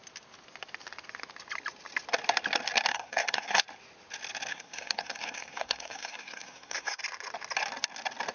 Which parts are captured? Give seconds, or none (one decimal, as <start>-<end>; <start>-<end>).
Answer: 0.0-2.9; 3.6-4.5; 7.0-8.3